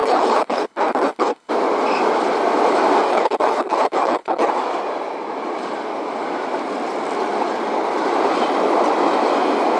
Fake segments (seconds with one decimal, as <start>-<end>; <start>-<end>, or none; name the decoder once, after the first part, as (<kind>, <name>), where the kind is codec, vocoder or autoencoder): 0.0-1.5 (codec, HILCodec); 3.1-4.5